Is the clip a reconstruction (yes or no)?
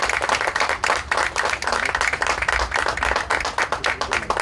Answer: no